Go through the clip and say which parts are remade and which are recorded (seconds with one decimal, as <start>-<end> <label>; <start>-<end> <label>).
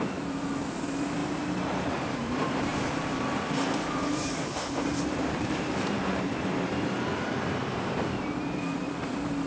0.0-8.8 remade; 8.8-9.5 recorded